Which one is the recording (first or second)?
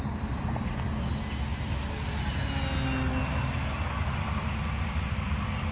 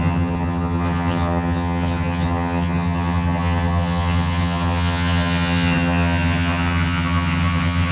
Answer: first